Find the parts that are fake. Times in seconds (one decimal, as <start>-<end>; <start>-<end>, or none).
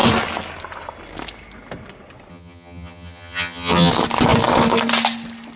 2.3-3.9